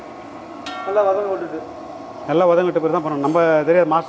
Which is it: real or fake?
real